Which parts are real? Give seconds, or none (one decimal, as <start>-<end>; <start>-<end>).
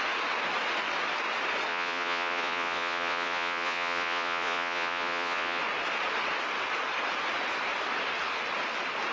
0.0-1.7; 5.6-9.1